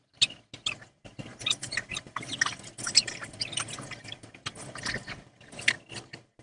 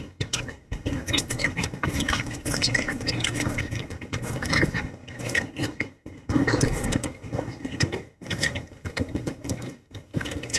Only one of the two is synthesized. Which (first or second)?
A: second